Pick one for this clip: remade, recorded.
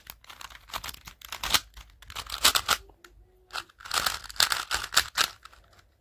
recorded